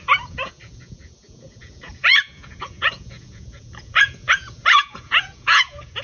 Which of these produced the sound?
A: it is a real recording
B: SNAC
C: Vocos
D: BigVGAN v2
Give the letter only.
C